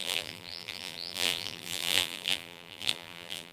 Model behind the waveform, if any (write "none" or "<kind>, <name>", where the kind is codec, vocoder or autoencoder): vocoder, BigVGAN v2